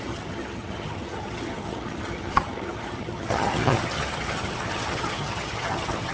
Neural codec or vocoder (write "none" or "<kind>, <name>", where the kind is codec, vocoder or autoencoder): vocoder, HiFi-GAN